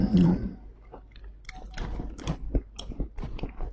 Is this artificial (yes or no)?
no